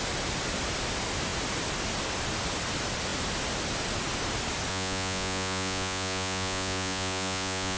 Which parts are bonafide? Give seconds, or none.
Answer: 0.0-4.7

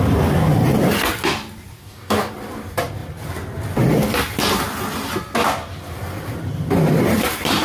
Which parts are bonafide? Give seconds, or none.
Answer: 0.0-1.8; 2.3-7.6